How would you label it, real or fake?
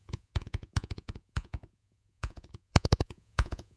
fake